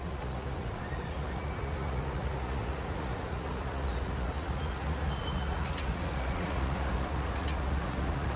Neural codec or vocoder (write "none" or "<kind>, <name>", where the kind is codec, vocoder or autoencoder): vocoder, Vocos